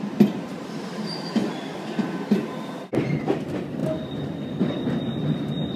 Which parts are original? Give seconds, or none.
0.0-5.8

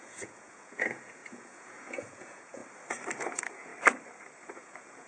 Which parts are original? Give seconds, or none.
2.6-3.2; 3.7-4.4

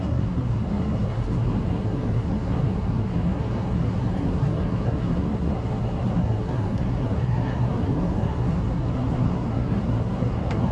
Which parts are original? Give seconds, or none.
none